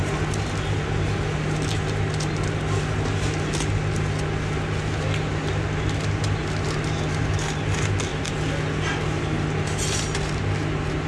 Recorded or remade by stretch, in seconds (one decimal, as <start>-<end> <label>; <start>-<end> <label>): 0.0-11.1 recorded